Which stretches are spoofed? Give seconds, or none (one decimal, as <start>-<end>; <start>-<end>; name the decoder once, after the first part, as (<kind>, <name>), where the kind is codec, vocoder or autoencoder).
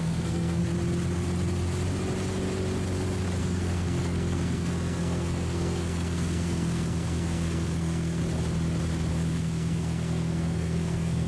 0.0-0.6 (codec, SNAC); 3.4-8.2; 9.1-11.3